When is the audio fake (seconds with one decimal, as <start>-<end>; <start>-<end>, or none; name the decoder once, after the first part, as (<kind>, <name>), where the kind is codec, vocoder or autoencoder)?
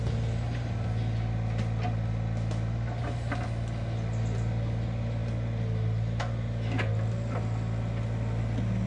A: none